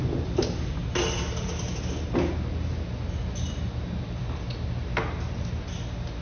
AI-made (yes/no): no